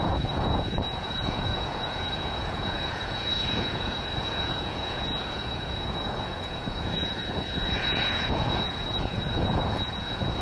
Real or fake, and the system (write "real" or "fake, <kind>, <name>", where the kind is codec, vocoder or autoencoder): fake, vocoder, Vocos